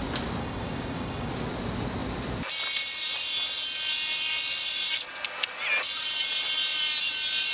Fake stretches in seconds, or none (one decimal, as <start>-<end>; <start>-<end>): 0.4-1.3